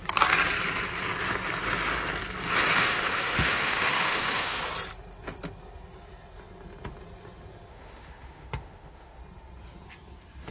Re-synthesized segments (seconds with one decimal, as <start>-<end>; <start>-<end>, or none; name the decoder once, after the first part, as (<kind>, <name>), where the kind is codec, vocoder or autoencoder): 2.8-4.6 (autoencoder, DAC-VAE); 7.7-9.2